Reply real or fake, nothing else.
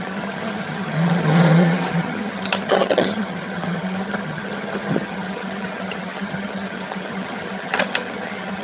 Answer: fake